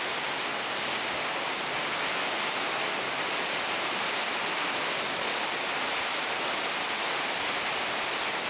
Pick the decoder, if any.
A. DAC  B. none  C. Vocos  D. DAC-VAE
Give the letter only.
B